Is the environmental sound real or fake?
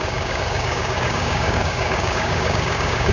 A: fake